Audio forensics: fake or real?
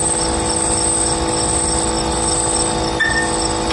real